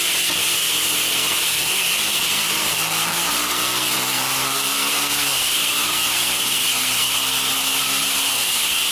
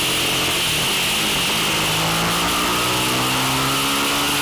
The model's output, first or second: first